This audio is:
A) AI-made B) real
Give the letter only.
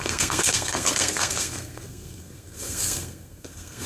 A